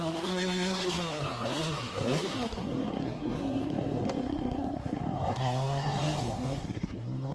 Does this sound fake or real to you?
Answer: fake